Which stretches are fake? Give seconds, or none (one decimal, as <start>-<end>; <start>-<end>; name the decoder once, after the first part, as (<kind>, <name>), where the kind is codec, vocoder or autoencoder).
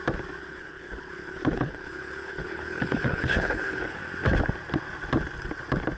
0.4-4.0 (codec, HILCodec)